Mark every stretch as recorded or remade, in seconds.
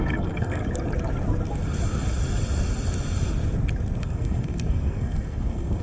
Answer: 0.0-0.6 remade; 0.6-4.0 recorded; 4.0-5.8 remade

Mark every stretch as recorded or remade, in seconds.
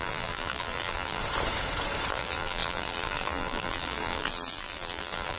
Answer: 0.0-1.2 remade; 1.2-2.1 recorded; 2.1-5.4 remade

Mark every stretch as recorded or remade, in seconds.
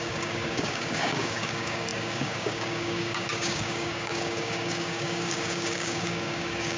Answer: 0.0-6.8 remade